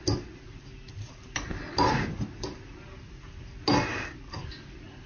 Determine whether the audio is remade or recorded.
recorded